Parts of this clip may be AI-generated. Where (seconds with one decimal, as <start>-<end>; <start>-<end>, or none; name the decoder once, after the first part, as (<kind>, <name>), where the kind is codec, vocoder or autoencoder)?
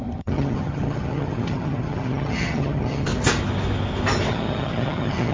0.0-3.1 (vocoder, HiFi-GAN); 4.3-5.3